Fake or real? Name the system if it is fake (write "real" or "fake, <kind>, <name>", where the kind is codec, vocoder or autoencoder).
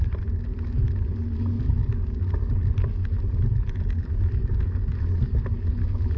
real